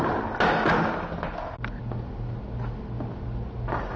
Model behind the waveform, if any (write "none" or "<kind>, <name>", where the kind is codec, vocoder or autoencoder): none